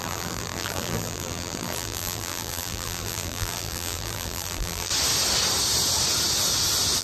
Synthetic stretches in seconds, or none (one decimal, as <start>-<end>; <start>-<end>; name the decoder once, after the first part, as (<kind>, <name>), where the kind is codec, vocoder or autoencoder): 0.0-4.9 (vocoder, BigVGAN v2)